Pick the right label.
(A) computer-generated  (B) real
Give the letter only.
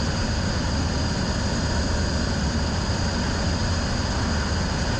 B